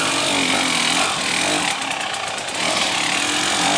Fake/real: real